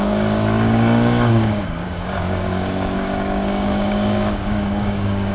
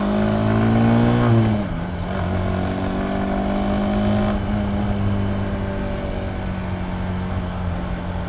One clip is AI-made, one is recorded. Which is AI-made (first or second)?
first